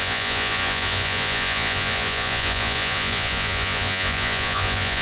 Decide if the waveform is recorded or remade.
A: remade